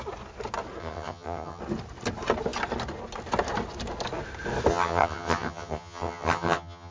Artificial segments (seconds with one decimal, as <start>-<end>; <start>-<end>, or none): 0.8-1.6; 4.7-6.9

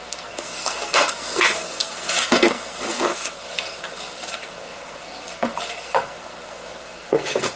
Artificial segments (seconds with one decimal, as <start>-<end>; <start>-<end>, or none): 0.0-7.6

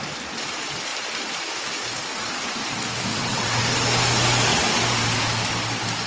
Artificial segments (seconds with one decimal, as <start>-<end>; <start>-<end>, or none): 3.1-3.6

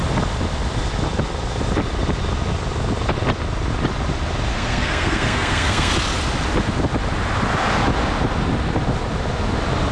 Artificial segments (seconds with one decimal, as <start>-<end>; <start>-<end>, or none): 4.5-5.9

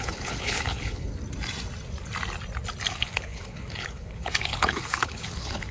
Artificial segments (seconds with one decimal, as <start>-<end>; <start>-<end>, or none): 0.0-1.1; 2.9-5.7

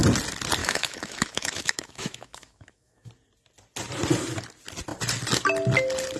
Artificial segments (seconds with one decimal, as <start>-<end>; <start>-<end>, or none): 0.6-3.1